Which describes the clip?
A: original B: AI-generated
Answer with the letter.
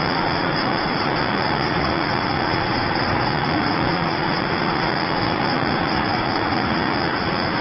B